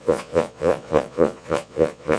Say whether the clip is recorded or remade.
remade